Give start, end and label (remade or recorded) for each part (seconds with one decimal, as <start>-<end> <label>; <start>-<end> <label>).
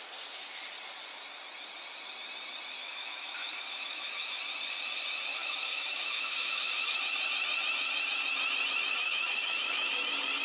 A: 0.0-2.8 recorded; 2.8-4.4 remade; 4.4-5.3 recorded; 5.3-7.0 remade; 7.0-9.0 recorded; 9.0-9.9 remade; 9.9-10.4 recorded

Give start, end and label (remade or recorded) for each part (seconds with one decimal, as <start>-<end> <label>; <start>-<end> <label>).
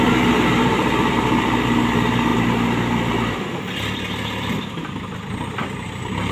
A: 0.0-2.3 remade; 2.3-4.6 recorded; 4.6-6.3 remade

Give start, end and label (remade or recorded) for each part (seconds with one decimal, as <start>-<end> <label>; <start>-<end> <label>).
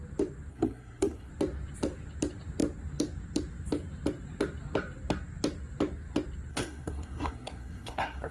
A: 0.0-0.5 recorded; 0.5-1.3 remade; 1.3-6.5 recorded; 6.5-8.3 remade